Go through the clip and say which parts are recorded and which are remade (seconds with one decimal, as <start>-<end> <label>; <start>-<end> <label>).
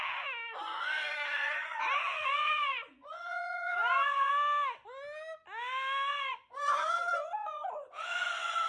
0.0-0.6 recorded; 0.6-4.3 remade; 4.3-6.1 recorded; 6.1-8.7 remade